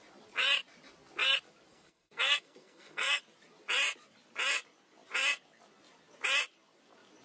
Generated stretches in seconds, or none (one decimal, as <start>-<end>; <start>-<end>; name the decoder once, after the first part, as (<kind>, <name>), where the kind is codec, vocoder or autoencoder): 1.7-3.2 (codec, SNAC)